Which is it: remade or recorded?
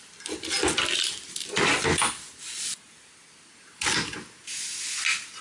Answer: recorded